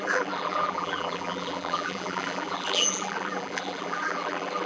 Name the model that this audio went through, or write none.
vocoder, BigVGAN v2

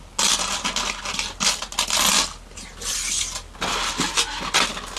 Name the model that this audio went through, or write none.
none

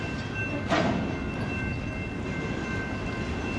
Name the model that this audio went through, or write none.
none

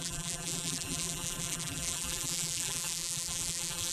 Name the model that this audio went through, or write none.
vocoder, BigVGAN v2